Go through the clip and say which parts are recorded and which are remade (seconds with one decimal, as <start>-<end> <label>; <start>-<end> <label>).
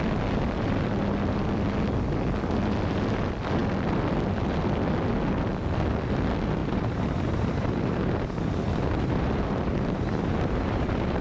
0.0-6.6 recorded; 6.6-11.2 remade